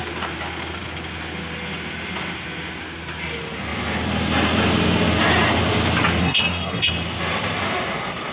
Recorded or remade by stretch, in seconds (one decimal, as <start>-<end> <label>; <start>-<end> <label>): 0.0-6.2 recorded; 6.2-6.9 remade; 6.9-8.3 recorded